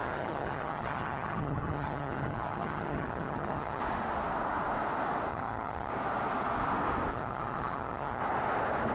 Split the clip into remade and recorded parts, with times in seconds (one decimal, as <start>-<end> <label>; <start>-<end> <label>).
0.0-3.8 remade; 3.8-5.3 recorded; 5.3-5.9 remade; 5.9-7.1 recorded; 7.1-8.2 remade; 8.2-8.9 recorded